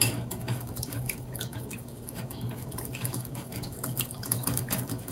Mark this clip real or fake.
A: fake